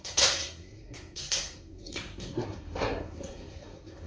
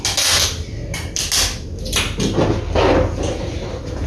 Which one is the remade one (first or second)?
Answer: first